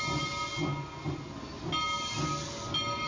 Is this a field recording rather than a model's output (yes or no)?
yes